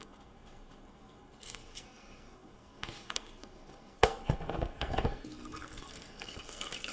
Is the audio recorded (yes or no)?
no